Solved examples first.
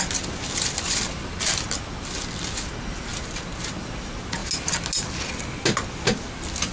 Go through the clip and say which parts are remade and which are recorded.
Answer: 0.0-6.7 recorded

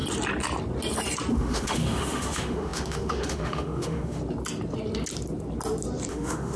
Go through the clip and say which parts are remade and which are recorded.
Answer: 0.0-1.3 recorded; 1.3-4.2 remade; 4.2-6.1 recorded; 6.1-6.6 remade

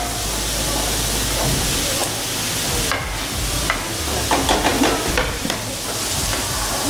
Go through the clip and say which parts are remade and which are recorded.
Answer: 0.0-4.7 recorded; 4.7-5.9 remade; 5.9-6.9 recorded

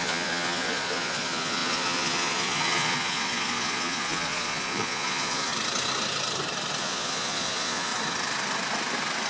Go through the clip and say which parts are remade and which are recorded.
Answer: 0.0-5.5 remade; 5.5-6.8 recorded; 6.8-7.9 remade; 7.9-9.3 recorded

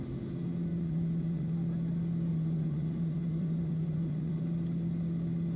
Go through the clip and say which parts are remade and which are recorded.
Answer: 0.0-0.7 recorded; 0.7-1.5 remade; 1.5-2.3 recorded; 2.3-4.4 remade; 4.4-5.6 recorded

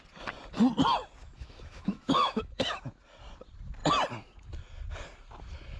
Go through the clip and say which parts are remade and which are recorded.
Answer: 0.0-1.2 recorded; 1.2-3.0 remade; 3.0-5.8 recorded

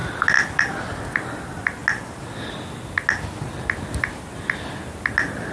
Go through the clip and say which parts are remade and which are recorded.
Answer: 0.0-1.0 recorded; 1.0-1.8 remade; 1.8-5.1 recorded; 5.1-5.5 remade